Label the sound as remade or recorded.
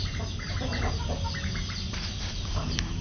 recorded